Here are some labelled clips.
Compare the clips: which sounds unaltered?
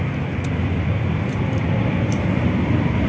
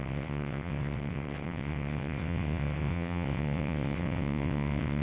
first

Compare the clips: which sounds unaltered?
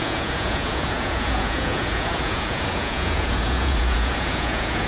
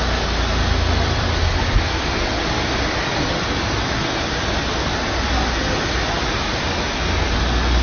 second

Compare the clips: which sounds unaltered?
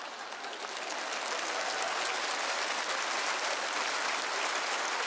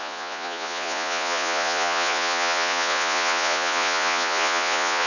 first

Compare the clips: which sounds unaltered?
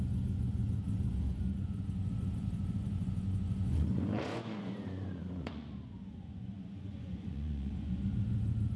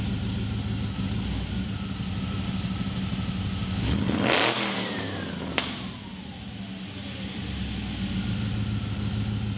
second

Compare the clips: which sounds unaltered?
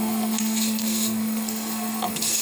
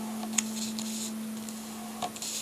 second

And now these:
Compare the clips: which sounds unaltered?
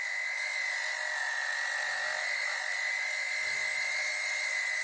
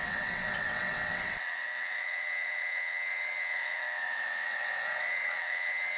first